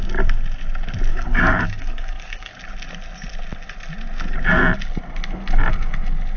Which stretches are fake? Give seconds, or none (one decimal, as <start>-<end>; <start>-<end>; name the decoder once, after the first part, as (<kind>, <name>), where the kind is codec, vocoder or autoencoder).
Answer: 1.1-2.5 (codec, DAC)